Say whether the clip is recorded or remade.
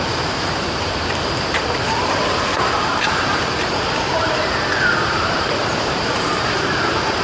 remade